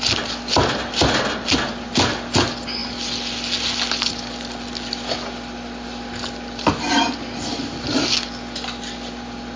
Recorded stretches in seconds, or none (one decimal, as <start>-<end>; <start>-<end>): 0.0-9.6